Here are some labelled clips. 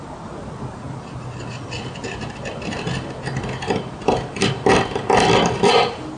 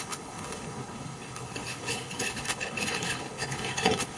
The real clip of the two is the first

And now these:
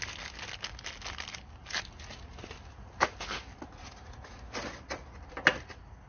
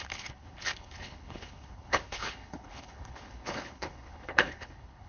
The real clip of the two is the first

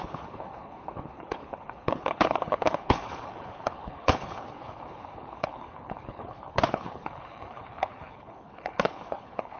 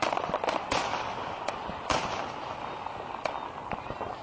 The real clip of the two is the second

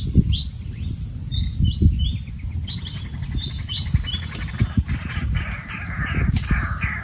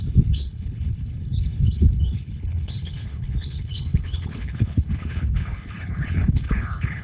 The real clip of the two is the first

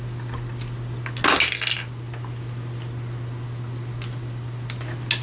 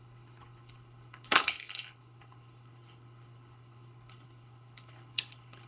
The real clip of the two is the first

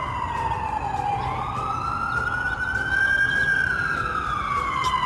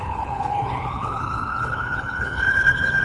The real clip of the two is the first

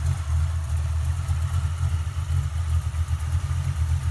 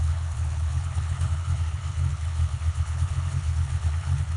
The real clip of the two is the first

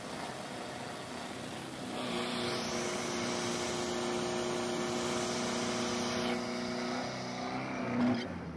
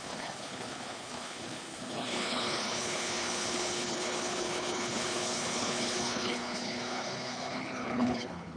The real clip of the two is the first